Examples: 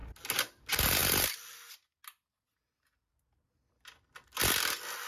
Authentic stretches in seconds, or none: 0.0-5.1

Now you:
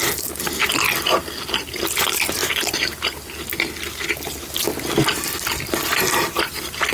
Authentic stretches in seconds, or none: 0.0-6.9